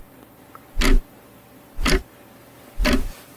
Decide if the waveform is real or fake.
real